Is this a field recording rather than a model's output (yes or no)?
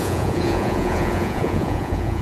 no